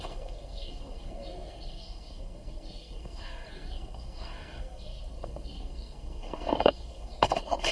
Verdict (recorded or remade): remade